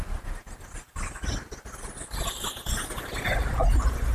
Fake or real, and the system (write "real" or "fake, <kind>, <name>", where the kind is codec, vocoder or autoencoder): real